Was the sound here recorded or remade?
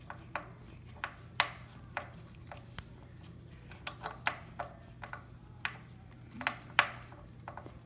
recorded